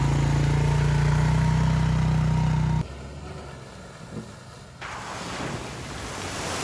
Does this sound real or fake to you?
real